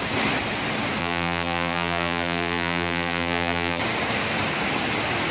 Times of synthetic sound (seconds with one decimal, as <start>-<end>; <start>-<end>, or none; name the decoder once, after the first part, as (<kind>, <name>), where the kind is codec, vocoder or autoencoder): 1.0-3.8 (vocoder, BigVGAN v2)